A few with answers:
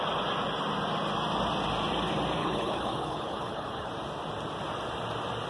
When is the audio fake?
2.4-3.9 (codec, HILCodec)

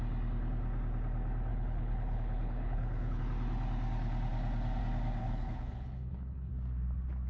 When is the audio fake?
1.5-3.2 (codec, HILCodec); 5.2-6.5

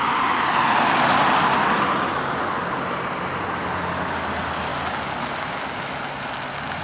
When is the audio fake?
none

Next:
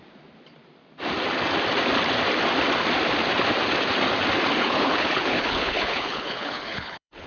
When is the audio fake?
4.6-7.3 (codec, HILCodec)

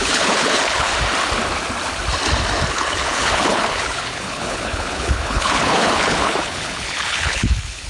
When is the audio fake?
0.0-0.9 (codec, HILCodec); 2.7-7.9

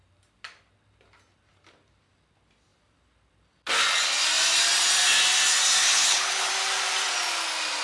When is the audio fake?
5.8-6.5 (codec, HILCodec)